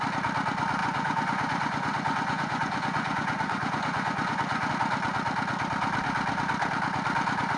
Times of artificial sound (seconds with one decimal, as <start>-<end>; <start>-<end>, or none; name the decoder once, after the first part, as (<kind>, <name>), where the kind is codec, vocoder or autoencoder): 0.8-4.7 (vocoder, Vocos)

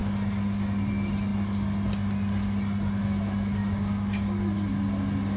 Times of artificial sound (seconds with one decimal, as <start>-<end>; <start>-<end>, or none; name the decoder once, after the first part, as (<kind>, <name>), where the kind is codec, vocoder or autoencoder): none